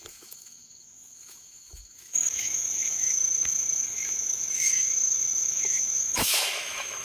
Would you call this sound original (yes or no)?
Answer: no